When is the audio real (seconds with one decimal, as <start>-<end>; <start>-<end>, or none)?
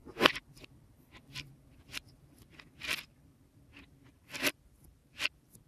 3.4-5.7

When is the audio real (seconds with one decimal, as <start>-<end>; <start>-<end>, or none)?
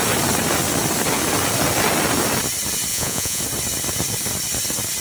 0.0-2.9; 3.4-5.0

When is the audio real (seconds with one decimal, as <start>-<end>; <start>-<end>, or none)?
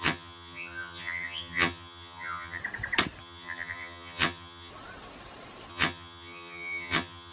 2.6-3.2; 4.7-5.7